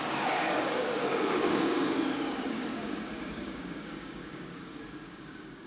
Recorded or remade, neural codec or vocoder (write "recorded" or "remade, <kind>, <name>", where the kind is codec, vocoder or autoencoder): remade, codec, DAC